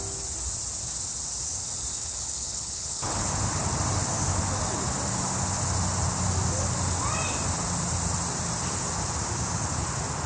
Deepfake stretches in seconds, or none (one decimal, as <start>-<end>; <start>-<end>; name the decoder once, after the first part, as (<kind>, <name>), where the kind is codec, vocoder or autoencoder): 1.9-3.3 (codec, HILCodec)